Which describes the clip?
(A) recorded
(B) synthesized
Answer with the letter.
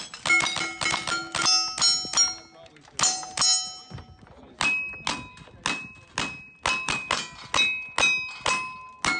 A